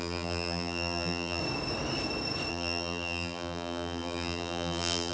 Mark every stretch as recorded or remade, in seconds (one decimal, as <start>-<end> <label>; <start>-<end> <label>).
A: 0.0-1.4 remade; 1.4-2.5 recorded; 2.5-5.1 remade